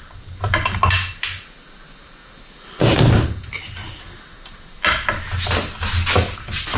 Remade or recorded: recorded